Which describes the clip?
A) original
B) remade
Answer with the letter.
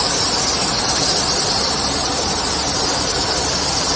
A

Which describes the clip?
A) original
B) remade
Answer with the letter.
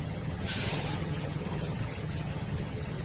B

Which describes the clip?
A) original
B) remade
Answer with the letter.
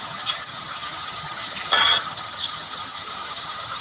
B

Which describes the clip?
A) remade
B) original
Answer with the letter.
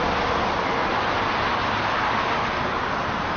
B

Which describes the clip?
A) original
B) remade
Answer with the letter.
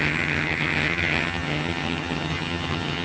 B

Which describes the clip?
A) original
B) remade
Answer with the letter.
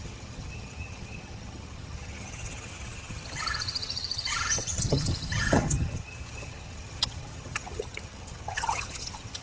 B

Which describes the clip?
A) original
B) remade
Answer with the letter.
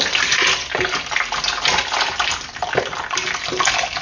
A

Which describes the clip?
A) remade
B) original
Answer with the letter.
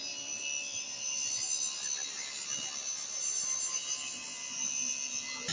B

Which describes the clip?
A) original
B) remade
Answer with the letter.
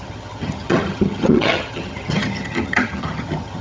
B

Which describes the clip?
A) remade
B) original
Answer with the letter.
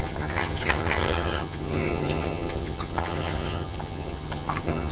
A